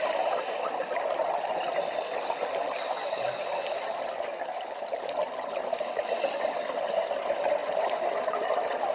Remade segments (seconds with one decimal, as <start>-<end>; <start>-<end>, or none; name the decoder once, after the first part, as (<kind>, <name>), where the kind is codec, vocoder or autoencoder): none